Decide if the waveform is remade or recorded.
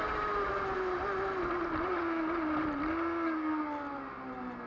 recorded